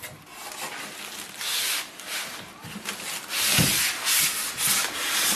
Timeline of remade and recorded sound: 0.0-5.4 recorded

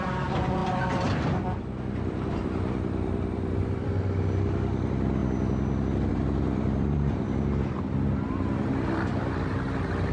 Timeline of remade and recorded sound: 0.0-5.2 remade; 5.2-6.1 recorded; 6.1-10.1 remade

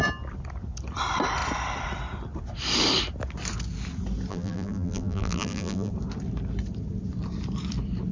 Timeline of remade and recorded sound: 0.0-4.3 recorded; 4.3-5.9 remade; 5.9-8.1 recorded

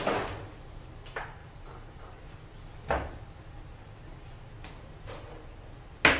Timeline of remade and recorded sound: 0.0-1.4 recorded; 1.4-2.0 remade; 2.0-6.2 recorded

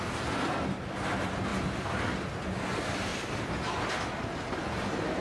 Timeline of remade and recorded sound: 0.0-3.1 recorded; 3.1-4.1 remade; 4.1-5.2 recorded

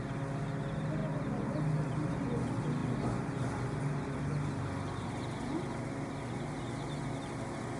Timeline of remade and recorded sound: 0.0-7.8 recorded

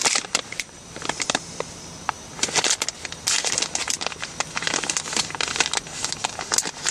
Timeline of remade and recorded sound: 0.0-1.5 remade; 1.5-6.9 recorded

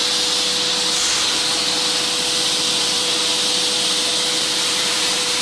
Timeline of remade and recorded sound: 0.0-2.8 recorded; 2.8-3.3 remade; 3.3-4.4 recorded; 4.4-5.4 remade